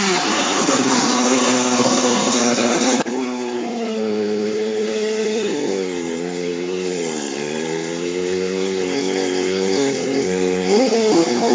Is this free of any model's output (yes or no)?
no